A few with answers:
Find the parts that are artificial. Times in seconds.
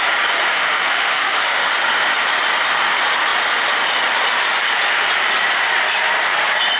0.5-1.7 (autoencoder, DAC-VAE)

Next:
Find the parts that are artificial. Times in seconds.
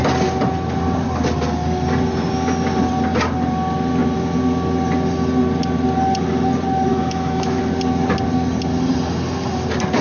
6.9-7.6 (autoencoder, DAC-VAE)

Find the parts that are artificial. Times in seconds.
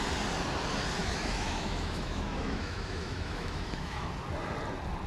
1.0-4.1 (autoencoder, DAC-VAE)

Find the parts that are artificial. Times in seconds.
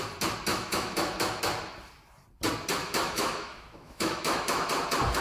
0.5-1.4 (autoencoder, DAC-VAE); 2.8-4.7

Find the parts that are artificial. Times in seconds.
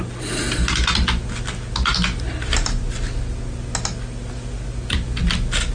none